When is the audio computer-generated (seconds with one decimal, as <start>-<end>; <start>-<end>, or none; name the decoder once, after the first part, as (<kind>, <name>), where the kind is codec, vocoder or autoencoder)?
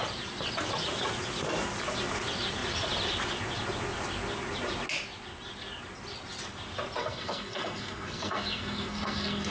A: 7.0-9.5 (codec, SNAC)